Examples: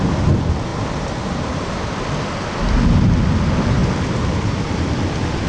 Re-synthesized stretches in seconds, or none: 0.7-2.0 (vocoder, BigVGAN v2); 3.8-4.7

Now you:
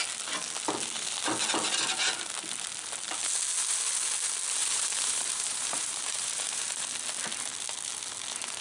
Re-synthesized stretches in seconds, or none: 4.6-6.8 (vocoder, BigVGAN v2)

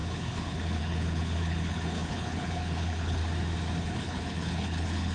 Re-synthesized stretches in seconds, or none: 0.0-3.2 (codec, HILCodec); 3.8-5.1

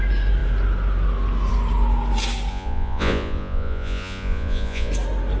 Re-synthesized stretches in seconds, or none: 2.5-4.9 (vocoder, Vocos)

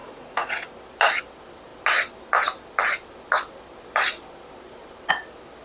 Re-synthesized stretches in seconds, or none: 0.0-0.5 (vocoder, Vocos)

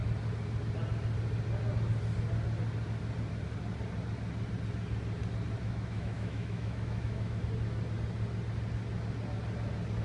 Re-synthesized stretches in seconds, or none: 5.6-7.4 (autoencoder, DAC-VAE)

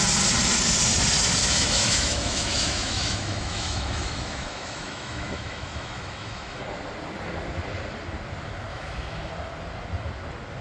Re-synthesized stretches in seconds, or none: 1.4-6.6 (autoencoder, DAC-VAE); 8.7-9.3